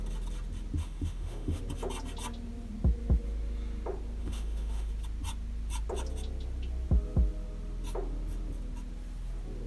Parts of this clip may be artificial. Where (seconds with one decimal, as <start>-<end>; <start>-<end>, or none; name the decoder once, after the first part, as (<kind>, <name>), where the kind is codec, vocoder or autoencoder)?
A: 0.8-1.6 (autoencoder, DAC-VAE); 4.2-4.9